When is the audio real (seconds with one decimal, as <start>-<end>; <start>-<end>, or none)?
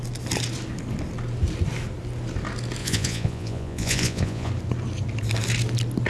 0.0-2.8; 4.5-6.1